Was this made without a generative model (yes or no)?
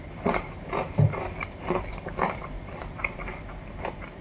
no